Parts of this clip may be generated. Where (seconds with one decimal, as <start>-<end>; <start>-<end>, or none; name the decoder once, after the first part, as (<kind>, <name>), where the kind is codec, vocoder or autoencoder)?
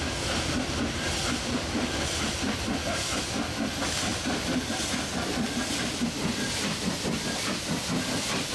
1.2-3.2 (vocoder, BigVGAN v2)